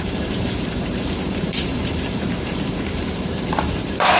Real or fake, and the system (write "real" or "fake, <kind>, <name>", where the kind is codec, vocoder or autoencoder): fake, vocoder, BigVGAN v2